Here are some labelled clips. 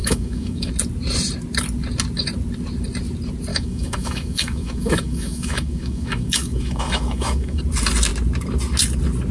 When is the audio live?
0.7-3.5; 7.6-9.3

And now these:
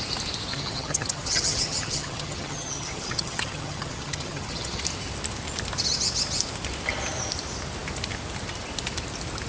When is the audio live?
0.0-0.5; 4.8-9.5